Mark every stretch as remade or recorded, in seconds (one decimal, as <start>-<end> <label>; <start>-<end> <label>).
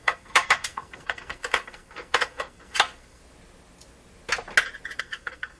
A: 0.0-3.2 remade; 3.2-5.0 recorded; 5.0-5.6 remade